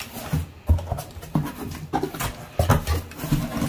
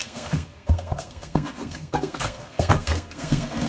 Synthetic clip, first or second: second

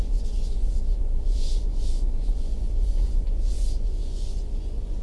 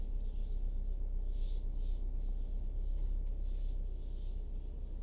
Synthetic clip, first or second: first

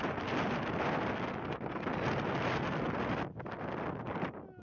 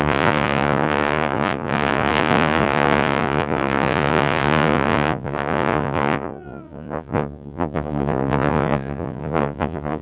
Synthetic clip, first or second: second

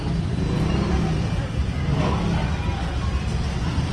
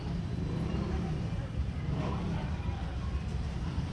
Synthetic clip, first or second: second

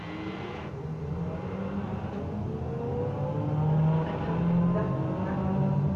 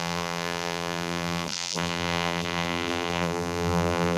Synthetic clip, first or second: second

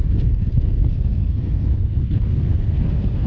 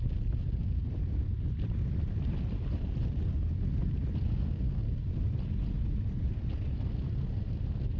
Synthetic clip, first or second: first